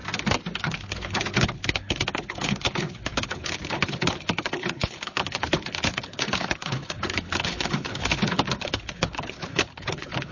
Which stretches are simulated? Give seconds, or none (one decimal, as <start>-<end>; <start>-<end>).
0.6-10.3